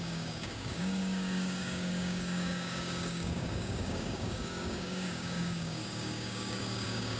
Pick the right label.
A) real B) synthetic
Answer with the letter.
B